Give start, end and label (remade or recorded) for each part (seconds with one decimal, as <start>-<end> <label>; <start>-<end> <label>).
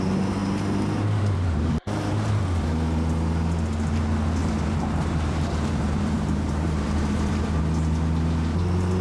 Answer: 0.0-0.4 recorded; 0.4-2.4 remade; 2.4-4.4 recorded; 4.4-7.6 remade; 7.6-9.0 recorded